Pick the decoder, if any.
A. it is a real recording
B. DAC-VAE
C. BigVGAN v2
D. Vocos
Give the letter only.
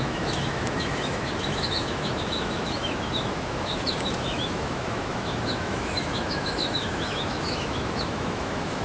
B